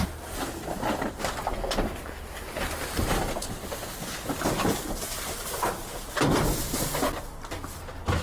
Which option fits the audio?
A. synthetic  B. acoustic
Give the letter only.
B